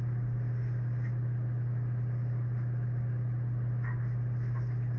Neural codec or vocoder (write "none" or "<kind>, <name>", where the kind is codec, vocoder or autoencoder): none